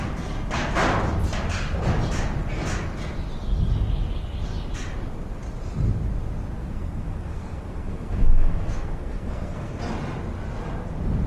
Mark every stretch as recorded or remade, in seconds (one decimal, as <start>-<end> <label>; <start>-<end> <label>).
0.0-6.6 recorded; 6.6-9.8 remade; 9.8-11.3 recorded